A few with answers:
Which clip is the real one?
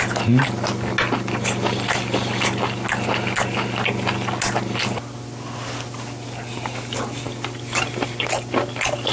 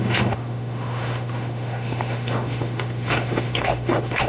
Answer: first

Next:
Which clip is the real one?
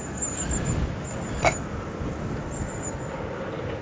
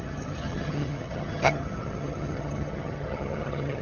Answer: first